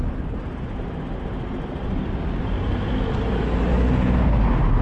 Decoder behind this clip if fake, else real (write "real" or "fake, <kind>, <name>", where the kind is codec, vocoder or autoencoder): real